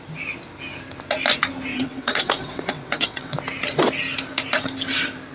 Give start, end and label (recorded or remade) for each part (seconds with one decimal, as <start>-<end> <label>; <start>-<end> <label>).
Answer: 0.0-1.7 recorded; 1.7-3.3 remade; 3.3-5.3 recorded